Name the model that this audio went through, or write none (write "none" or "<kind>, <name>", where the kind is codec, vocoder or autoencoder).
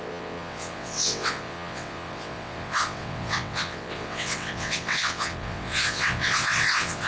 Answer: vocoder, WaveNeXt